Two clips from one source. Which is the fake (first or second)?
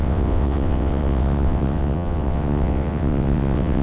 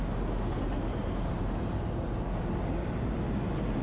first